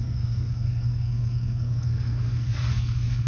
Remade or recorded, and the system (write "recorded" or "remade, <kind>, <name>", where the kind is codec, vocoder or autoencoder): remade, codec, SNAC